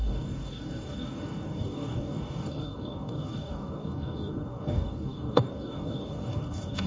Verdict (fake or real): fake